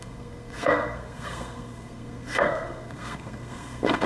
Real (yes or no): no